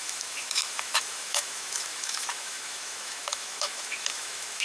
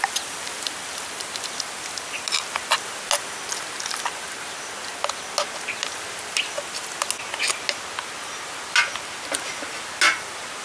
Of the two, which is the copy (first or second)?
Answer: first